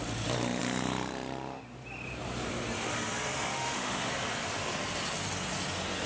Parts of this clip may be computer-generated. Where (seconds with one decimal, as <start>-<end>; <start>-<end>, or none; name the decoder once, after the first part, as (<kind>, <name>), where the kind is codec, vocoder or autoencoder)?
3.5-4.1 (autoencoder, DAC-VAE)